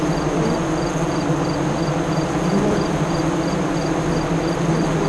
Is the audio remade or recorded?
recorded